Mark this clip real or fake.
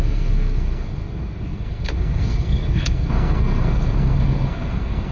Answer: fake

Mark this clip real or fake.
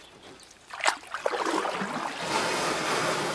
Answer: real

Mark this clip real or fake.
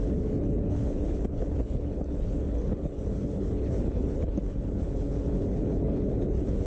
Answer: fake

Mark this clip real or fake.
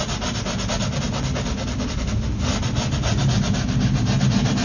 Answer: real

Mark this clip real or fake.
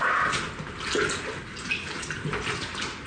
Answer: real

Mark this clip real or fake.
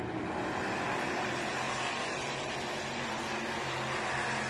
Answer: real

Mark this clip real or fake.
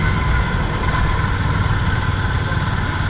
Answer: real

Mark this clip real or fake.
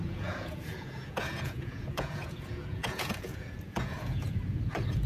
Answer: fake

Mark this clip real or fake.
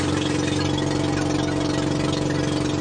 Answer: real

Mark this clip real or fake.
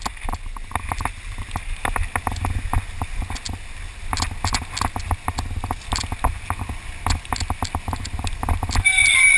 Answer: real